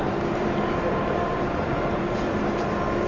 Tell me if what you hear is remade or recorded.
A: remade